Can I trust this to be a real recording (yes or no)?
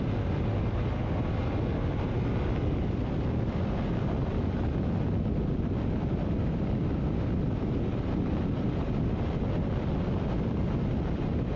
yes